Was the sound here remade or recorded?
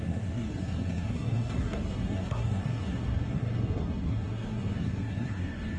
remade